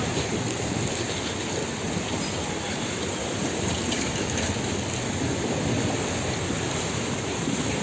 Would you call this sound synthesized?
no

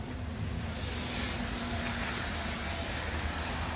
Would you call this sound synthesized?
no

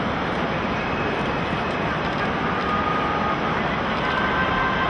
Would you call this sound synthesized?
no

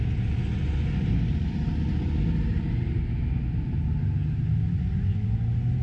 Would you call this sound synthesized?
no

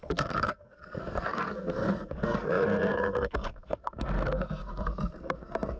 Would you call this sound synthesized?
yes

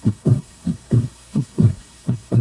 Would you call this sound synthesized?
yes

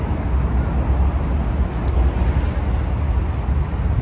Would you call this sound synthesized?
no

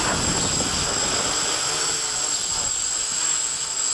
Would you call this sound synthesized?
no